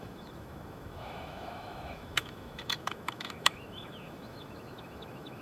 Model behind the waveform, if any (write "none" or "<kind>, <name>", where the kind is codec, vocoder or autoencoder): autoencoder, DAC-VAE